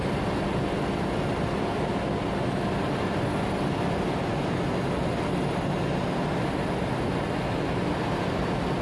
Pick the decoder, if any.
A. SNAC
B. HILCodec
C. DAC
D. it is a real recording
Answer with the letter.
D